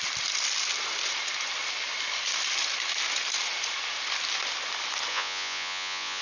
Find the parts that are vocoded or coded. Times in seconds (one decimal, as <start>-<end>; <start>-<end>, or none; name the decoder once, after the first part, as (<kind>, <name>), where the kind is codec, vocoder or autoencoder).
5.1-6.2 (vocoder, Vocos)